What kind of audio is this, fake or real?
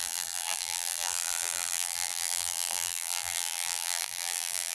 fake